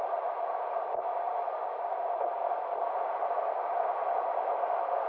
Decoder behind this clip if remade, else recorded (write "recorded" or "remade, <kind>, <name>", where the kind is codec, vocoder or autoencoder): recorded